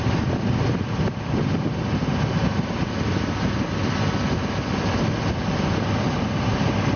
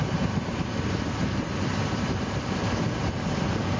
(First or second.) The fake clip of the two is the second